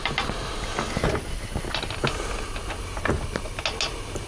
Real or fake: real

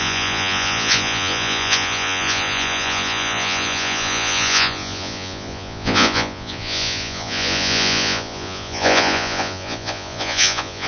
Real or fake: fake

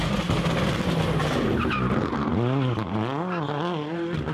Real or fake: real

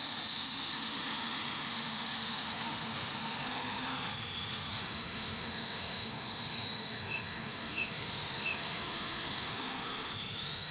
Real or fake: fake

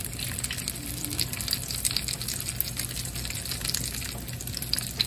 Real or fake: real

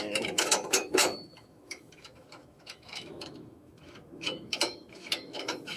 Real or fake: fake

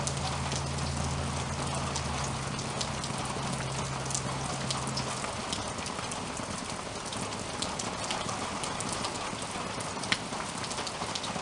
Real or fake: real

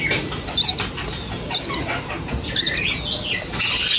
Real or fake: real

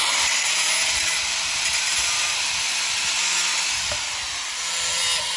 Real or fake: real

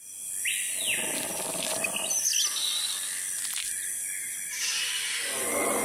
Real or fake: real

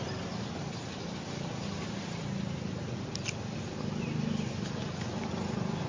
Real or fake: real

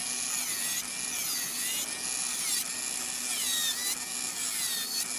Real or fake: real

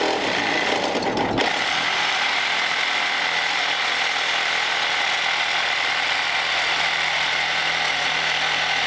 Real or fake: real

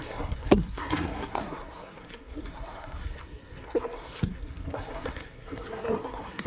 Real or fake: fake